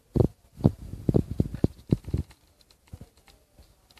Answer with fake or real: real